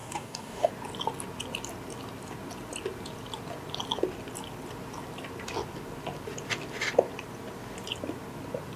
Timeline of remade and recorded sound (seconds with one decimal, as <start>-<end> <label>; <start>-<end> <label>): 0.0-0.7 remade; 0.7-8.8 recorded